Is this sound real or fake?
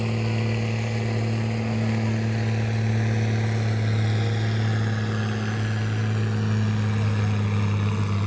real